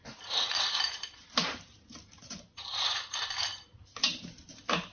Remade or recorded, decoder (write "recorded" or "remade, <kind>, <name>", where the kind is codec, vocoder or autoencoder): remade, vocoder, BigVGAN v2